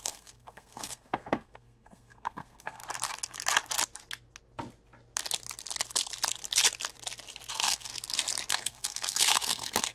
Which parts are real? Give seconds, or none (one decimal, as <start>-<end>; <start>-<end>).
2.8-7.5; 7.9-8.5